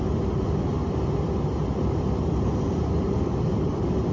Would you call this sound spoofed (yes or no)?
no